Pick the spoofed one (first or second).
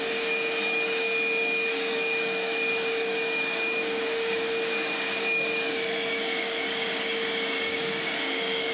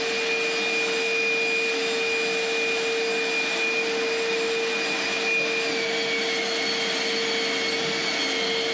first